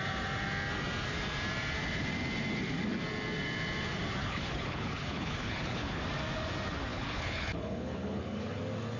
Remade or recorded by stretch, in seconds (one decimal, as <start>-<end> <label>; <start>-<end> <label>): 0.0-4.2 recorded; 4.2-6.0 remade; 6.0-6.9 recorded; 6.9-8.6 remade; 8.6-9.0 recorded